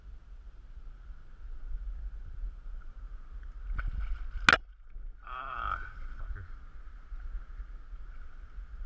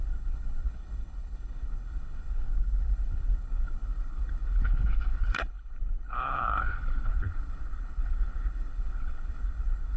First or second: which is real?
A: first